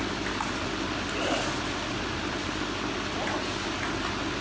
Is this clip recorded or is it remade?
recorded